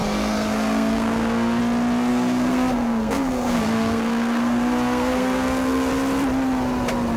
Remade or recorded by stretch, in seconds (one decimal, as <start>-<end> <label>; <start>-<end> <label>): 0.0-1.6 remade; 1.6-2.1 recorded; 2.1-5.9 remade; 5.9-7.2 recorded